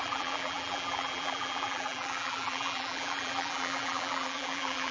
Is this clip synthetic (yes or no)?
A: yes